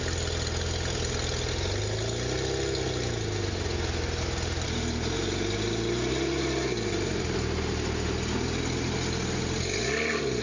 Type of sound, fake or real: real